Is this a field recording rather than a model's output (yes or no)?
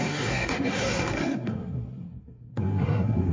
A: no